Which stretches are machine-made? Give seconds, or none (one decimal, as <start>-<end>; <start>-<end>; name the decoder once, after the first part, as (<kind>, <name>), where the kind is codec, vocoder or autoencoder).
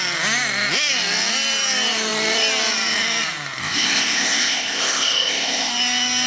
3.6-5.7 (codec, ZipCodec)